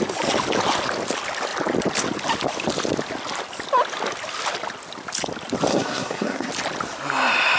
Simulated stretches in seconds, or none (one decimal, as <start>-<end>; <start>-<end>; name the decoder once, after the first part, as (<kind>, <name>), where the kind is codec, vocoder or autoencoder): 5.7-6.5 (codec, SNAC)